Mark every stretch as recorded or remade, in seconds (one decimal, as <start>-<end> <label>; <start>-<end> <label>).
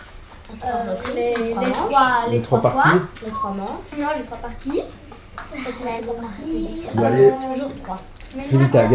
0.0-0.8 remade; 0.8-6.0 recorded; 6.0-7.4 remade; 7.4-8.4 recorded; 8.4-8.9 remade